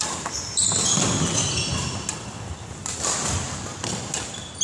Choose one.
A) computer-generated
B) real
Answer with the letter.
B